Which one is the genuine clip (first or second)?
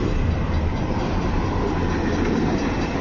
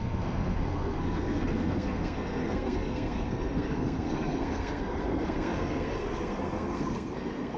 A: first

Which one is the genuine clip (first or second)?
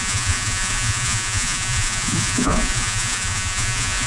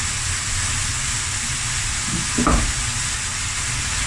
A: second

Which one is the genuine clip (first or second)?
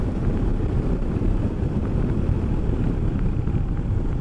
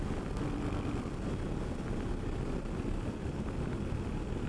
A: second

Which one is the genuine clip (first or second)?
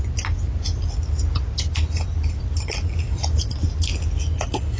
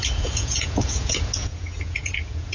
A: first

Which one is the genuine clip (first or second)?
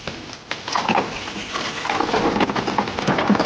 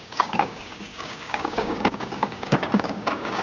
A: first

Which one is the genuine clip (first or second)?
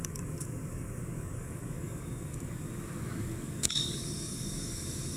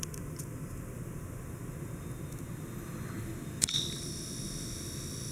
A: second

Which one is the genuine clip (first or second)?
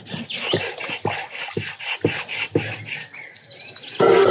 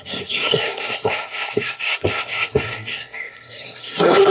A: first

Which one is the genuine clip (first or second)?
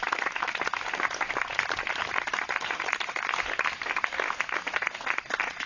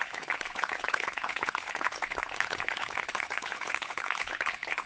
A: first